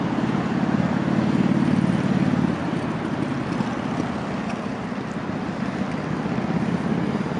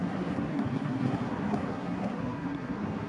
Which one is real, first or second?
first